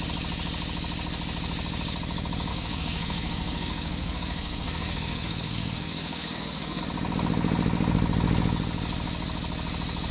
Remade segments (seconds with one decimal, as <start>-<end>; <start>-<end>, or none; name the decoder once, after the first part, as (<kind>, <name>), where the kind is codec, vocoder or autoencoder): 2.5-6.8 (codec, SNAC)